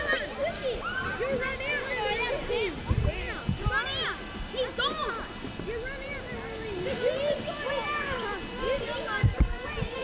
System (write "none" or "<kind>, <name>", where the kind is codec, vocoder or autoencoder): none